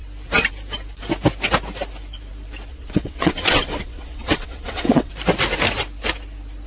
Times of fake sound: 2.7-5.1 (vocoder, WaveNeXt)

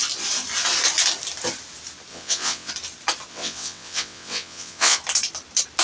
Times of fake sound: 2.1-2.7 (vocoder, WaveNeXt); 3.3-5.0

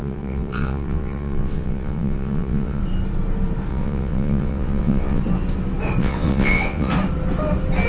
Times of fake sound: 0.0-2.8 (vocoder, WaveNeXt); 3.7-5.2; 6.0-6.9

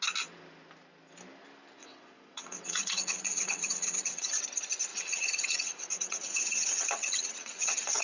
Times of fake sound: 1.8-4.4 (vocoder, WaveNeXt); 4.9-8.0